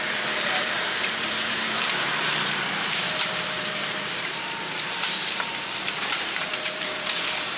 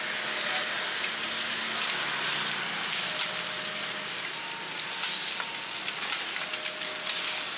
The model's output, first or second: first